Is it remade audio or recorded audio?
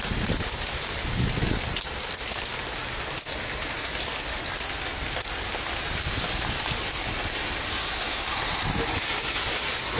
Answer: recorded